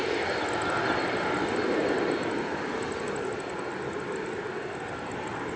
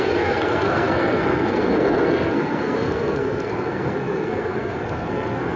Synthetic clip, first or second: second